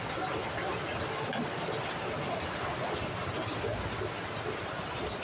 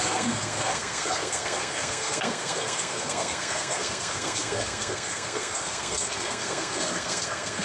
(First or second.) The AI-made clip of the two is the second